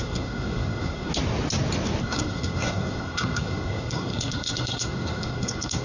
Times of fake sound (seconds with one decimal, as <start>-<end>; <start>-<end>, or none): 0.0-1.1; 2.0-5.8